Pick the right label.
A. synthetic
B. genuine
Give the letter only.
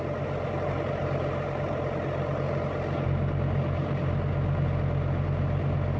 B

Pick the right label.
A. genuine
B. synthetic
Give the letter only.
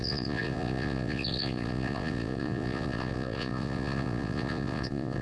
B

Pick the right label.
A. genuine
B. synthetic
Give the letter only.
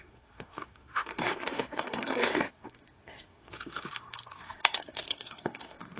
B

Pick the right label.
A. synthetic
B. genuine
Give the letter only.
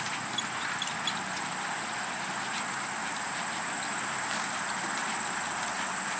B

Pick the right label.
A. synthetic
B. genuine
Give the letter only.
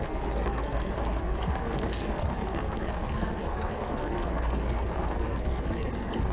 A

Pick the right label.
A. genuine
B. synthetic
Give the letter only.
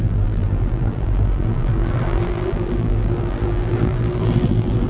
B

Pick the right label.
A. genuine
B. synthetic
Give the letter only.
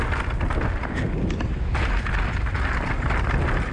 A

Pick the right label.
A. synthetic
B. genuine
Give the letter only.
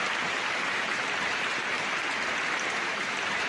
A